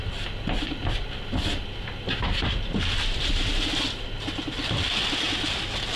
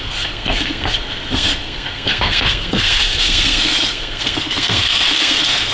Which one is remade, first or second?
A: second